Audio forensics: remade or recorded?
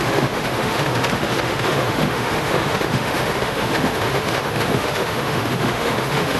remade